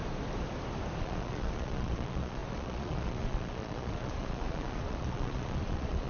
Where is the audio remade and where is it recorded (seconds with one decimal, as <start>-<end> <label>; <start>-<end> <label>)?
0.0-1.0 recorded; 1.0-6.1 remade